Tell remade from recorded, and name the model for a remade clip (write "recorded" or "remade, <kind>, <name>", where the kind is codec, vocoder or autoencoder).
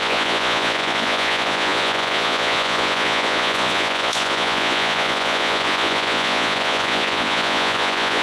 remade, vocoder, Vocos